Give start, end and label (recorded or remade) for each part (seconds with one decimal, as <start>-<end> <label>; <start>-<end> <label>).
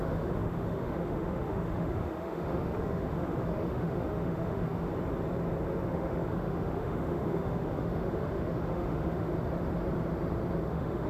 0.0-4.9 remade; 4.9-5.9 recorded; 5.9-9.3 remade; 9.3-10.6 recorded; 10.6-11.1 remade